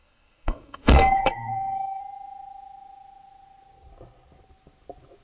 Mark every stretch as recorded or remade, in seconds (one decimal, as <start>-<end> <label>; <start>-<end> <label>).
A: 0.0-2.0 remade; 2.0-5.2 recorded

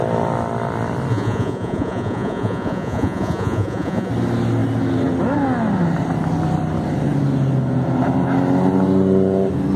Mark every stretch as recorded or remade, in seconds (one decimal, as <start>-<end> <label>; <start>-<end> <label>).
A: 0.0-1.1 recorded; 1.1-4.1 remade; 4.1-9.8 recorded